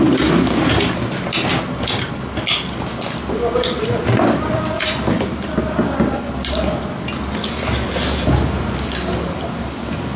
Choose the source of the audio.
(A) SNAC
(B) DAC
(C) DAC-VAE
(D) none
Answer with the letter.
D